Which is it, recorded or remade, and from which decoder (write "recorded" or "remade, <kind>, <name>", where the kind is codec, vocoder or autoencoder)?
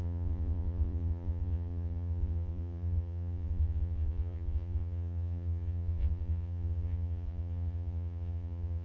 remade, vocoder, Vocos